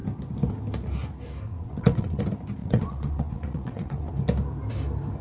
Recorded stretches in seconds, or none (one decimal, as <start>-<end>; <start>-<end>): 0.0-1.5; 2.2-2.6; 4.1-5.2

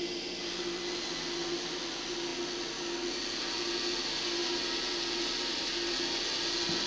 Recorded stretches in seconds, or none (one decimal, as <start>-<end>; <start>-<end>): 0.0-6.9

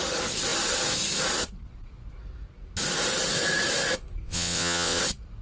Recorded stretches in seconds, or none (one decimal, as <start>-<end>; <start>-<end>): 0.0-4.2; 5.0-5.4

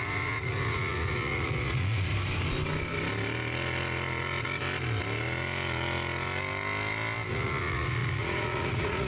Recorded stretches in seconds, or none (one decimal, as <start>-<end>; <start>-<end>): 2.1-7.3

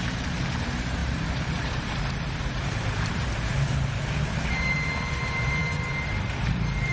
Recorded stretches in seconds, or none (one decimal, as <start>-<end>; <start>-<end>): none